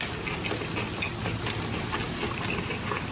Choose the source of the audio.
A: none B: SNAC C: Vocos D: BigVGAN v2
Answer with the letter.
A